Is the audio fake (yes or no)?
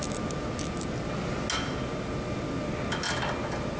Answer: no